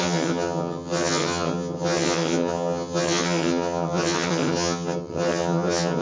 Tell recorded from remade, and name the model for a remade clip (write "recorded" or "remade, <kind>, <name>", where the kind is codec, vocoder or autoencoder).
remade, vocoder, HiFi-GAN